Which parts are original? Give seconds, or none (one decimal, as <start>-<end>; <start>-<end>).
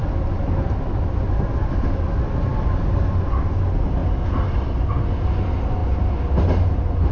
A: 0.0-7.1